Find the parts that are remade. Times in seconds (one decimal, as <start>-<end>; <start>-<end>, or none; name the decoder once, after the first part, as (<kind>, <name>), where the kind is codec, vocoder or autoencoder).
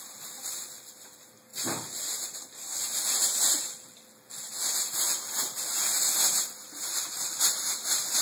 none